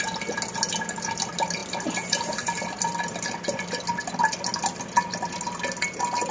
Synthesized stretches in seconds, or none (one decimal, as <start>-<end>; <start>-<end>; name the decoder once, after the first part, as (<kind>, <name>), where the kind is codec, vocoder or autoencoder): none